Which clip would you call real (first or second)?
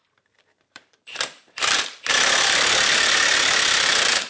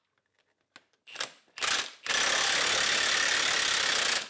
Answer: second